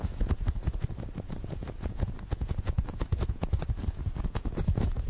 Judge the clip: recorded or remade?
remade